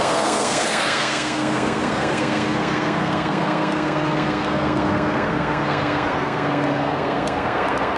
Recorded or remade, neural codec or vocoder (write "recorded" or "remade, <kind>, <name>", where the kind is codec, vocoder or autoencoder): remade, codec, SNAC